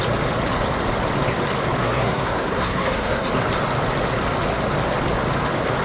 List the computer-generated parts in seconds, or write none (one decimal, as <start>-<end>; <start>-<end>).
1.8-3.3